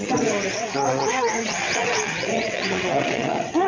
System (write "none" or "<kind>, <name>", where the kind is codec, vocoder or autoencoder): vocoder, WaveNeXt